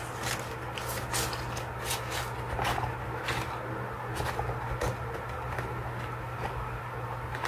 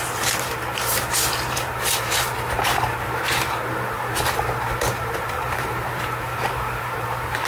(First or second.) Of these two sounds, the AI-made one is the second